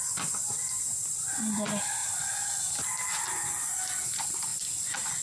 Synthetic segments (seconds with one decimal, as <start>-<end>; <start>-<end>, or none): 0.0-0.9; 2.0-2.6; 4.5-5.2